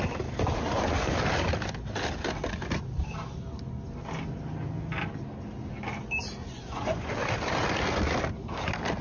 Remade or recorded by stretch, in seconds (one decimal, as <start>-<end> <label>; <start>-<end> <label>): 0.0-6.4 recorded; 6.4-7.1 remade; 7.1-9.0 recorded